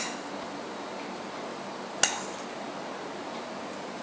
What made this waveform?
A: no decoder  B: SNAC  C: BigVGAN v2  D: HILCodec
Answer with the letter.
A